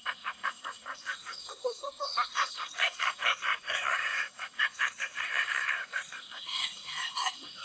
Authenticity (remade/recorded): remade